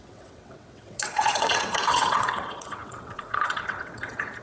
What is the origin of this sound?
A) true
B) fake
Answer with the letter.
B